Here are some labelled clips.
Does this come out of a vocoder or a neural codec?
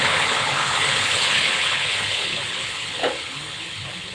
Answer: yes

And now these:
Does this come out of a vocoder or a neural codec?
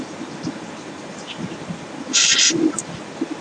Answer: no